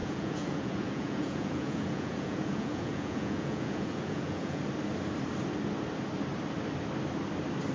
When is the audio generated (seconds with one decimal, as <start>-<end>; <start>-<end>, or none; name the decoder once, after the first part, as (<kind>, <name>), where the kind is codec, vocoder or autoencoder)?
0.0-4.6 (vocoder, Vocos)